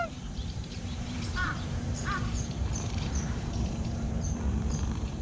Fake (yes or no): yes